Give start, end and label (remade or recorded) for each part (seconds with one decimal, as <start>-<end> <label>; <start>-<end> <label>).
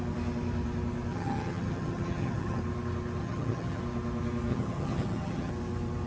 0.0-1.1 recorded; 1.1-2.6 remade; 2.6-3.2 recorded; 3.2-3.8 remade; 3.8-4.5 recorded; 4.5-5.5 remade; 5.5-6.1 recorded